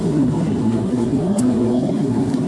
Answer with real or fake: fake